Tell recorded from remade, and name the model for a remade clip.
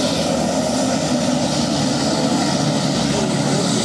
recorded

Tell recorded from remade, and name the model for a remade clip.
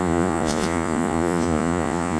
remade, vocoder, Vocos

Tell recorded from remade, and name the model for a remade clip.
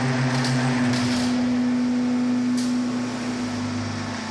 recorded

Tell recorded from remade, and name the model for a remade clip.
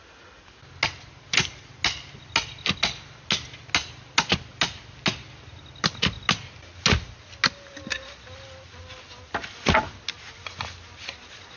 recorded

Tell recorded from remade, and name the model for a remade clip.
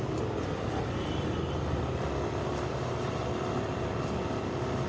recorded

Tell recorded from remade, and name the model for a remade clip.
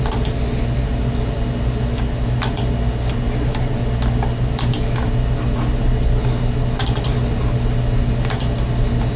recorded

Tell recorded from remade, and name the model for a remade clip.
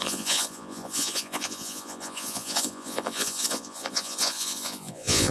remade, vocoder, Vocos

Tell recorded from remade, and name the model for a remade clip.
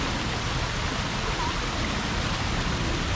recorded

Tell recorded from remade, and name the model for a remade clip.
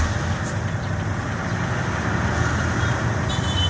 recorded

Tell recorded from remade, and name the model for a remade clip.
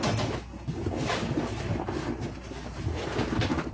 recorded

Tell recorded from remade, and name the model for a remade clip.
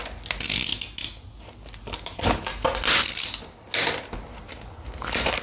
recorded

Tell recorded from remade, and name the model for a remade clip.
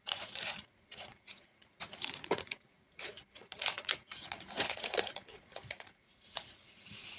remade, vocoder, Vocos